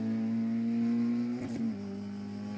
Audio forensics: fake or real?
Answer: real